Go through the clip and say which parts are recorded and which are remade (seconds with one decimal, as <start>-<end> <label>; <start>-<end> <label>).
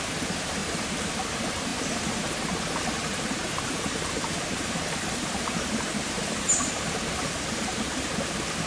0.0-0.6 recorded; 0.6-1.1 remade; 1.1-3.0 recorded; 3.0-8.1 remade; 8.1-8.7 recorded